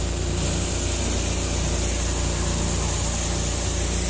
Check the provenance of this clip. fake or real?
real